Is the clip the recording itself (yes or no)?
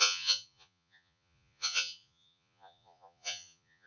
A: no